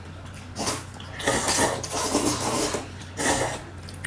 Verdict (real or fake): real